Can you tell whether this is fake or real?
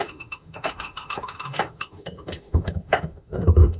fake